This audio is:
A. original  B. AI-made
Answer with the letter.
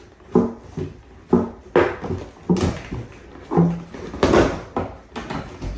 A